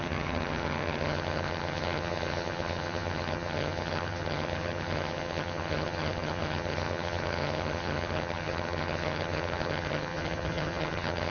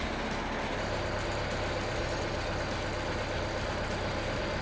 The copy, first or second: first